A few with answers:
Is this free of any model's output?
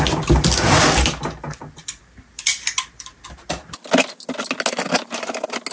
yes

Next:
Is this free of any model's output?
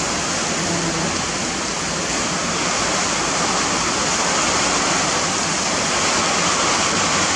yes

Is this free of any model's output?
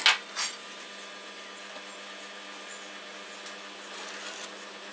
yes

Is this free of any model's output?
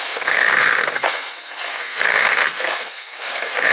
no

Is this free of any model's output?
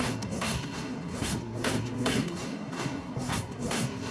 no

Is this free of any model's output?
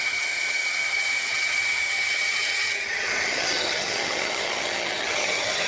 no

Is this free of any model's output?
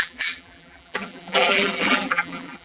no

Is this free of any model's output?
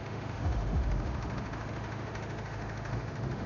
no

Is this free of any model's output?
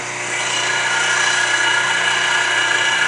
yes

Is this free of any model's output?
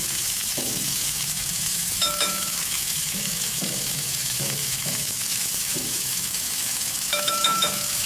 no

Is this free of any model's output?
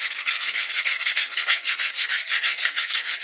no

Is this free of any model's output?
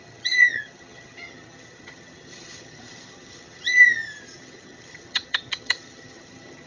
no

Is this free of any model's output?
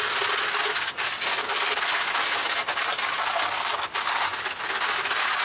yes